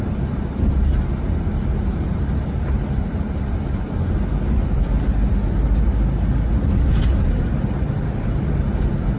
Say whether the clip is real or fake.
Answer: real